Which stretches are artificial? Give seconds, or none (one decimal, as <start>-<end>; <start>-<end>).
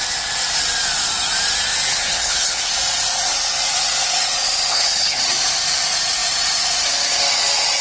1.9-2.7; 4.7-5.2